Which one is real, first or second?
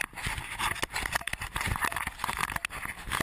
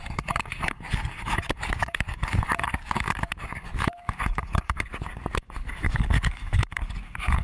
first